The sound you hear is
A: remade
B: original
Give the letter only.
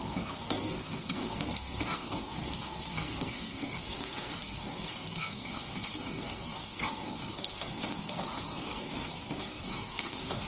A